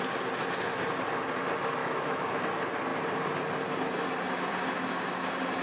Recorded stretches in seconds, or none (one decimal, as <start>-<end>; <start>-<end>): 0.0-1.8; 2.4-5.6